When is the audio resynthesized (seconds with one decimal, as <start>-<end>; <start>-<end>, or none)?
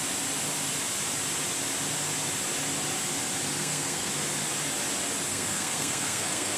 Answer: 3.6-4.1; 5.3-6.6